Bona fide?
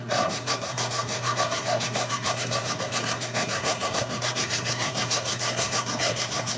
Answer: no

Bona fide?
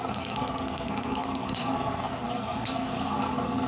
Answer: no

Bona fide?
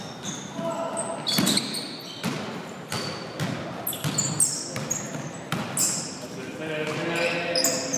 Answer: yes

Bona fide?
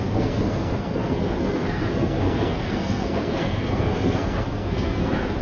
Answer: no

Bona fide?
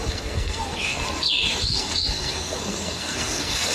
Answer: no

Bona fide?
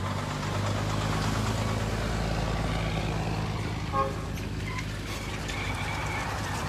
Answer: yes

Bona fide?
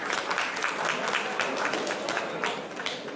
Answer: yes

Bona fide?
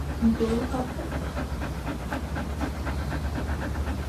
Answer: yes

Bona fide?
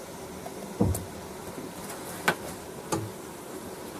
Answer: yes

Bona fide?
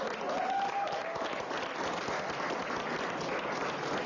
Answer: yes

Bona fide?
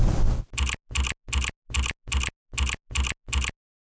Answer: yes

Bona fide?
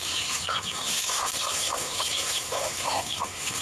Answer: no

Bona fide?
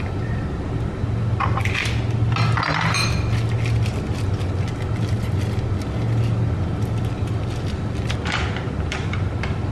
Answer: yes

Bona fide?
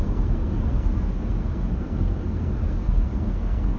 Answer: no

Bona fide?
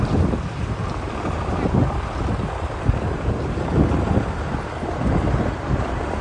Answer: yes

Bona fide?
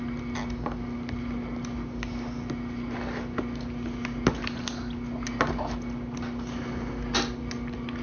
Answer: yes